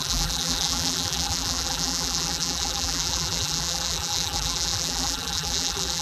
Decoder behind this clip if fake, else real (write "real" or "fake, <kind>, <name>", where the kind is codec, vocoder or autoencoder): fake, vocoder, BigVGAN v2